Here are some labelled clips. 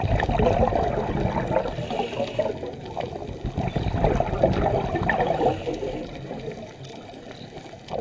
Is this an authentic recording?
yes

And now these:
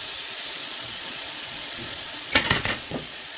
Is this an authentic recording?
no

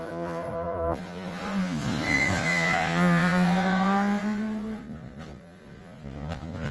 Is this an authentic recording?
no